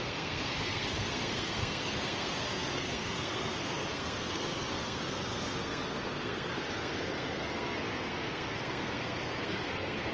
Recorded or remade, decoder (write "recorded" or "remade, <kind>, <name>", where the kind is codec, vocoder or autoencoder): remade, codec, SNAC